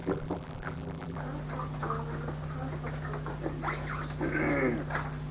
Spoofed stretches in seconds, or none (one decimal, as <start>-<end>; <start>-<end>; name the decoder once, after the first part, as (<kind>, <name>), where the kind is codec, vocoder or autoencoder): 0.0-1.2 (vocoder, BigVGAN v2)